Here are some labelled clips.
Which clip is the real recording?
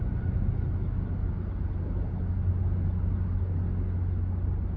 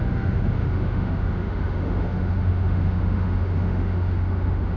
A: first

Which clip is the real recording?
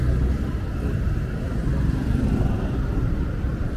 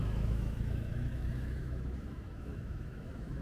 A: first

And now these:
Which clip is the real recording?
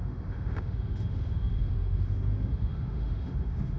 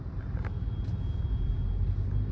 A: second